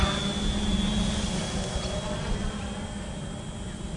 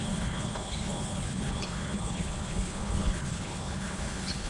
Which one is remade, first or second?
second